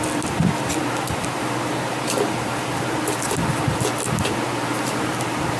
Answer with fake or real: real